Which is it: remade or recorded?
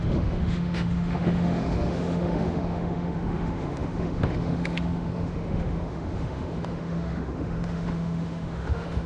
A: remade